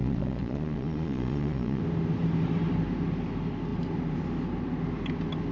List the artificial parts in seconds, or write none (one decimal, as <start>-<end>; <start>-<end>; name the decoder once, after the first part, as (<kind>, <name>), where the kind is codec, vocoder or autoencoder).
0.0-1.8 (vocoder, Vocos)